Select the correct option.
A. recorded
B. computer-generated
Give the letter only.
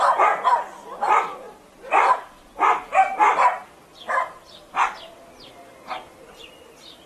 A